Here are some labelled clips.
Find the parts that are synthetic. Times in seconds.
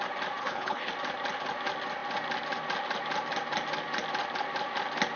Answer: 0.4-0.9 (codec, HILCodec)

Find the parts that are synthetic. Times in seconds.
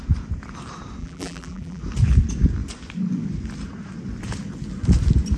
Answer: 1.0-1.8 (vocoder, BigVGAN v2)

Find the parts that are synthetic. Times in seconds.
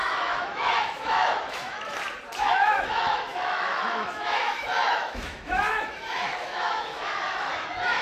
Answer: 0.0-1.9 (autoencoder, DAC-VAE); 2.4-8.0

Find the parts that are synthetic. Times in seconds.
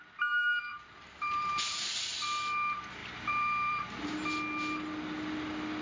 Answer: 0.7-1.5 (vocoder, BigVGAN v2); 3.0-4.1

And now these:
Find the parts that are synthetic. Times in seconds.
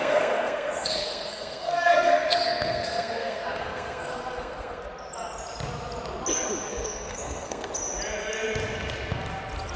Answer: 0.0-4.8 (codec, SNAC); 6.7-7.7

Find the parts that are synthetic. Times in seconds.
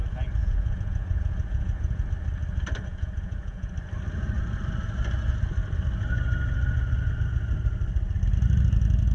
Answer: 0.4-2.1 (vocoder, Vocos); 2.9-3.7